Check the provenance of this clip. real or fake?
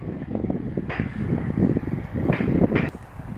fake